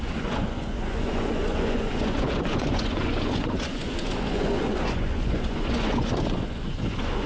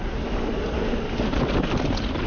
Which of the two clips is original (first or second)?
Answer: second